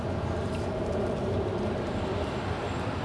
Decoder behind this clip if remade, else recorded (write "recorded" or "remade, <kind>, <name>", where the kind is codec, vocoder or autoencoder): recorded